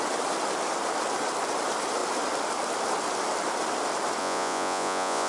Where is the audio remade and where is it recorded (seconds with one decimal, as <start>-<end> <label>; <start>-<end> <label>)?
0.0-4.2 recorded; 4.2-5.3 remade